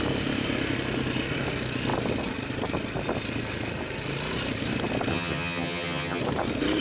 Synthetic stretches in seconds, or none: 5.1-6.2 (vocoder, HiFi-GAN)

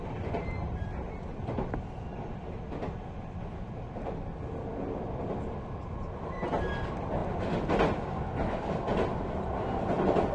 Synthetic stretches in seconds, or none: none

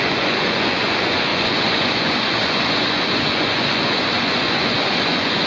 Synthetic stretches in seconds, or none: 0.0-5.5 (vocoder, Vocos)

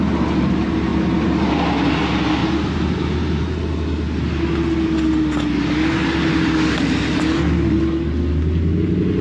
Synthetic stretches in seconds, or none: none

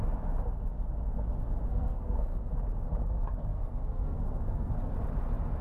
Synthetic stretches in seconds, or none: 1.7-2.5 (codec, SNAC); 3.0-4.7